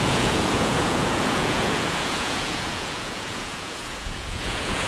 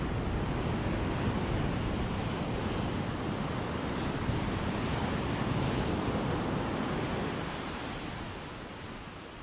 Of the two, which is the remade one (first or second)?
first